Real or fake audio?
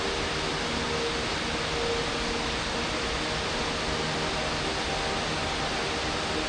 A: real